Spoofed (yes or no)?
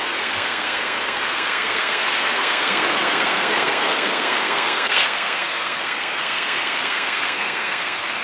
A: yes